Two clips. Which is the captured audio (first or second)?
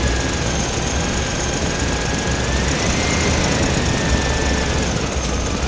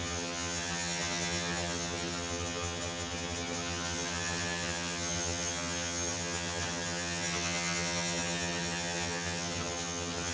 first